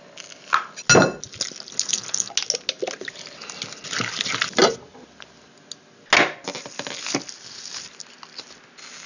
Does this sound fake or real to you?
real